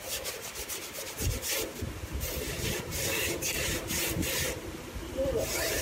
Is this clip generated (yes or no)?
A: yes